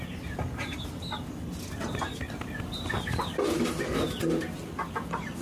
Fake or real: real